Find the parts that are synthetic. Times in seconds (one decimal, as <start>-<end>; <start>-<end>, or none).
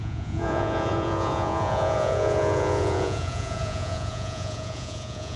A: 0.0-5.4